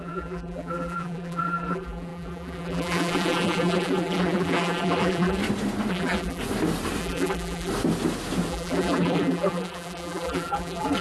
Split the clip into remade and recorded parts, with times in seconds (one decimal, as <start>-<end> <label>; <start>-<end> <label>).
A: 0.0-5.4 remade; 5.4-5.9 recorded; 5.9-6.4 remade; 6.4-7.0 recorded; 7.0-7.7 remade; 7.7-8.5 recorded; 8.5-11.0 remade